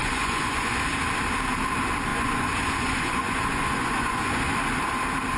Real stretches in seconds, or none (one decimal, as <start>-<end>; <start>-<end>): 0.9-2.1; 4.4-5.4